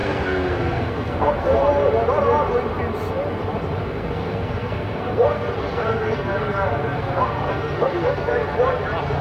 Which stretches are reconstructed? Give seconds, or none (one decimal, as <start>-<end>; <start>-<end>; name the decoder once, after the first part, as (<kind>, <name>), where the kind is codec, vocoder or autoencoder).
0.0-1.6 (codec, SNAC); 3.8-8.3

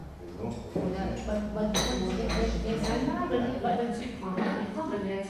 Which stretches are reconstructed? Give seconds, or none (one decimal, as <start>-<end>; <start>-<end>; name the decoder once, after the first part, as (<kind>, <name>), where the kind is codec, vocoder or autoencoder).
3.7-5.3 (codec, SNAC)

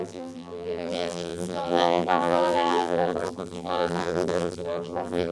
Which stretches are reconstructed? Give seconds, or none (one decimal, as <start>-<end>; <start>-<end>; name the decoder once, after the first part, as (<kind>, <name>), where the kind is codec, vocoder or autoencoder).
0.0-5.3 (vocoder, BigVGAN v2)

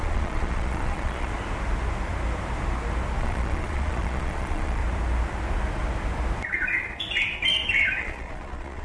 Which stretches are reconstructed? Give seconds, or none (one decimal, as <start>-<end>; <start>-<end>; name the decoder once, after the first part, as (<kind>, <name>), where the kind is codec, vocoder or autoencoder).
0.0-1.3 (vocoder, Vocos); 3.2-4.8; 8.0-8.8